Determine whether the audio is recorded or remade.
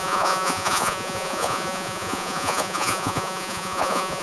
remade